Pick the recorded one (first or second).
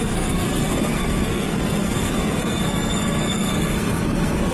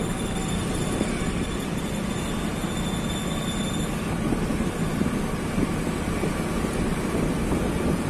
second